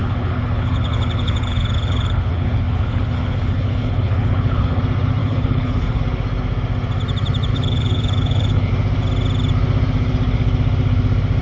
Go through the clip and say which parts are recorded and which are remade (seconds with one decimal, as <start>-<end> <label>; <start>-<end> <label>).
0.0-4.8 remade; 4.8-5.2 recorded; 5.2-6.0 remade; 6.0-7.5 recorded; 7.5-8.7 remade; 8.7-11.4 recorded